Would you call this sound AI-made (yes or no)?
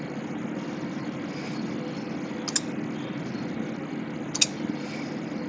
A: no